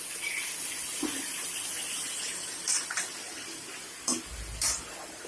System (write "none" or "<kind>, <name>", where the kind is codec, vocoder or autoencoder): none